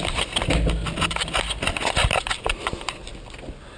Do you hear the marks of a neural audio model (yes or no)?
no